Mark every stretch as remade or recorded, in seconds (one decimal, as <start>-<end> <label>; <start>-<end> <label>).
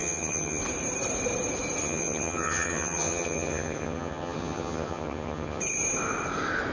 0.0-0.6 remade; 0.6-1.8 recorded; 1.8-5.6 remade; 5.6-6.7 recorded